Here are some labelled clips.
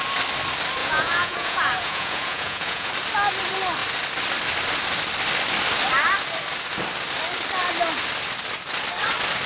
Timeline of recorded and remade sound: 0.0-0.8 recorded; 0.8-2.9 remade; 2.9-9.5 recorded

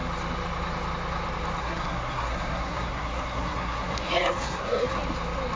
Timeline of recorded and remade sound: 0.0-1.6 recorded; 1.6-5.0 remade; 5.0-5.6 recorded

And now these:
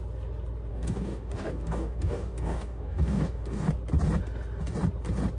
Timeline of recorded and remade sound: 0.0-0.7 recorded; 0.7-3.7 remade; 3.7-5.4 recorded